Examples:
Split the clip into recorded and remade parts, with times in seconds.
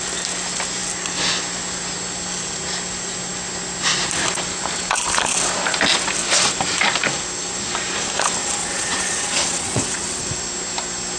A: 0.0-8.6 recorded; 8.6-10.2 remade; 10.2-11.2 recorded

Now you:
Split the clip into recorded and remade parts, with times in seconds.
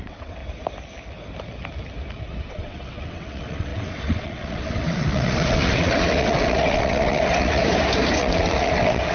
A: 0.0-0.4 remade; 0.4-2.5 recorded; 2.5-7.6 remade; 7.6-8.2 recorded; 8.2-9.1 remade